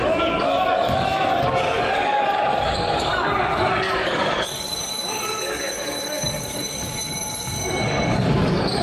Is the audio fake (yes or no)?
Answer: yes